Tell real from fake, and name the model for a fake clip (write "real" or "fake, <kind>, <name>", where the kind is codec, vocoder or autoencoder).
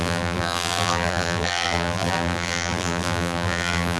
fake, vocoder, BigVGAN v2